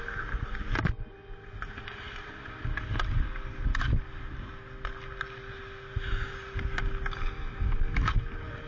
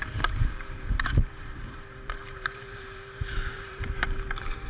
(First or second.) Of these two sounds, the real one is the first